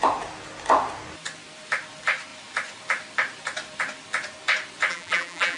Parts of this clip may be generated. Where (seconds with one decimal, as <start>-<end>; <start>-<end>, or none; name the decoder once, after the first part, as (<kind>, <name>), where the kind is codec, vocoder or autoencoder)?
4.9-5.6 (vocoder, BigVGAN v2)